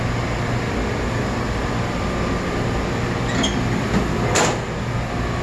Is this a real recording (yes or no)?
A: yes